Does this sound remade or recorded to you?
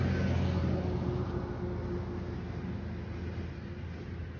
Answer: recorded